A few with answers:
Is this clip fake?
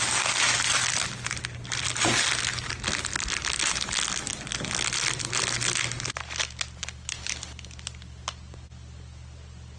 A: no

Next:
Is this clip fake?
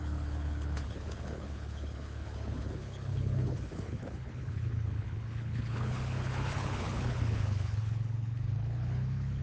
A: yes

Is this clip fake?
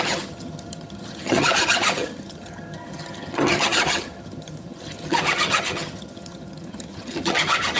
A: yes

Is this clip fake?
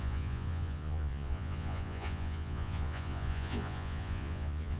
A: yes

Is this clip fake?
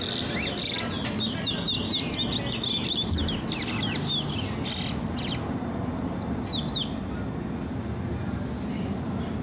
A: no